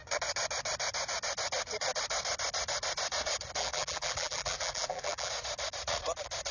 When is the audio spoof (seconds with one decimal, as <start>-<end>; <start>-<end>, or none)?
3.6-5.3